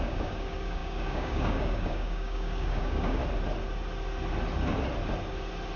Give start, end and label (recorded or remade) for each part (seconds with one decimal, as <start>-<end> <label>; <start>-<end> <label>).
0.0-3.2 remade; 3.2-5.8 recorded